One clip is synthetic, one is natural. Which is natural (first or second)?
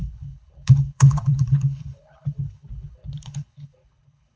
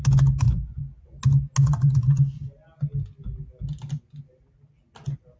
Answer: second